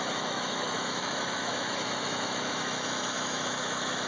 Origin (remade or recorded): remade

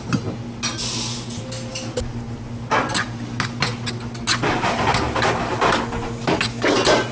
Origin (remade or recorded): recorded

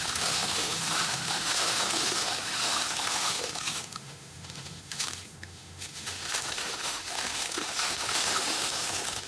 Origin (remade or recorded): remade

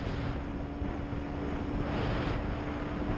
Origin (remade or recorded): recorded